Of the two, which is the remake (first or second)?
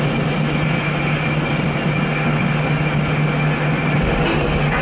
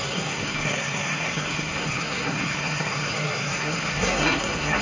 second